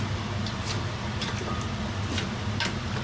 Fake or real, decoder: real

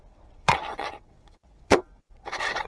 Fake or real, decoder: fake, vocoder, WaveNeXt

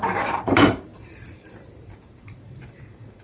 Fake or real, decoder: fake, vocoder, BigVGAN v2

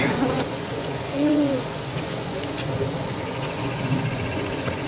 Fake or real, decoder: fake, vocoder, Vocos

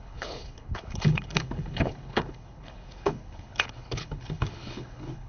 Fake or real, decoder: fake, codec, HILCodec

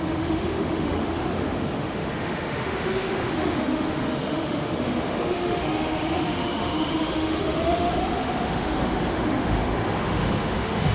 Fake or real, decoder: fake, autoencoder, DAC-VAE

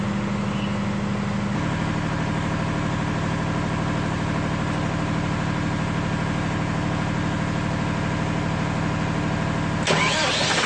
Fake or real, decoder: real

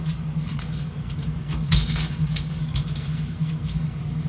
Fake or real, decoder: fake, codec, SNAC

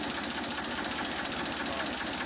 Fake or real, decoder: real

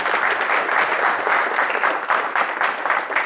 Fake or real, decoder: real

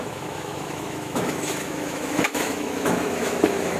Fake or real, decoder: fake, autoencoder, DAC-VAE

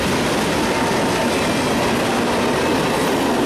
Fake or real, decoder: real